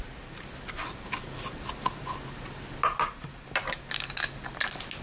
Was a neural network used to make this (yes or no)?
no